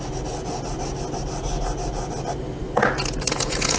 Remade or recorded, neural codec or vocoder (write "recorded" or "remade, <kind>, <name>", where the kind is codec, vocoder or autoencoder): recorded